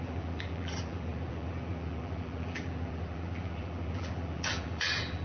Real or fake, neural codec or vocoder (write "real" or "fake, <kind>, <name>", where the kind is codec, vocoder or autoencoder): fake, vocoder, BigVGAN v2